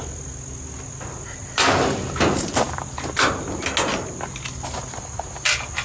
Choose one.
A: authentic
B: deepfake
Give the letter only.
A